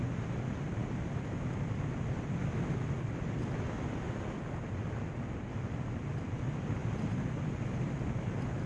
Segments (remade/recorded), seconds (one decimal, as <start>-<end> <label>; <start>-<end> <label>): 0.0-8.7 recorded